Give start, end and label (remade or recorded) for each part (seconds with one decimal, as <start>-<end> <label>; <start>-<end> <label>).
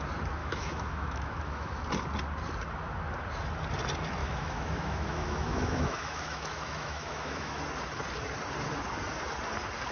0.0-0.4 recorded; 0.4-1.8 remade; 1.8-4.2 recorded; 4.2-7.6 remade; 7.6-9.9 recorded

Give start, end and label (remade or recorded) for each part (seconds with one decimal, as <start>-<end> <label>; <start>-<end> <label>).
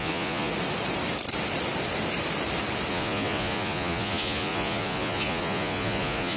0.0-0.5 remade; 0.5-2.9 recorded; 2.9-6.4 remade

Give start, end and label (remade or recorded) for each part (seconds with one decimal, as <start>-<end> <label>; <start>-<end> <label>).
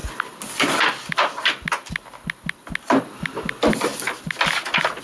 0.0-5.0 recorded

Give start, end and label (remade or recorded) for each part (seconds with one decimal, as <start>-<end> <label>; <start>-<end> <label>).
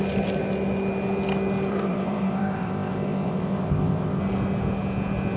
0.0-1.7 recorded; 1.7-4.2 remade; 4.2-5.4 recorded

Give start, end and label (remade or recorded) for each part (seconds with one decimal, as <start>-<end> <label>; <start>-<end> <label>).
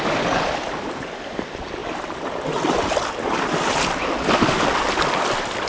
0.0-5.7 recorded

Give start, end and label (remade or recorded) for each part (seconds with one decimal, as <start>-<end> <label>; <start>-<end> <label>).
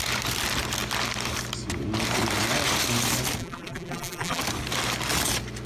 0.0-3.4 recorded; 3.4-4.4 remade; 4.4-5.7 recorded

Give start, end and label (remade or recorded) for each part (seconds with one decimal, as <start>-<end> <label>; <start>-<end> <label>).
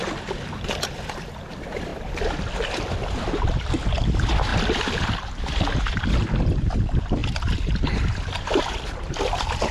0.0-1.9 remade; 1.9-3.4 recorded; 3.4-9.7 remade